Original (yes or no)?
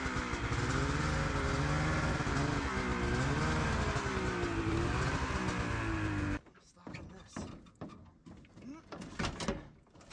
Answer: yes